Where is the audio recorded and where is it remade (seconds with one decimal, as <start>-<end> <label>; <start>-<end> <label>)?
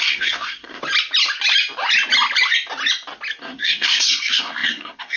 0.0-0.8 remade; 0.8-3.4 recorded; 3.4-5.2 remade